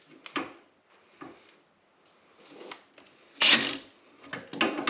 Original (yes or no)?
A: yes